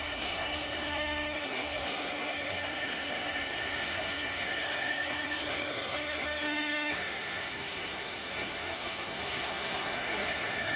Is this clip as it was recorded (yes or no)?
no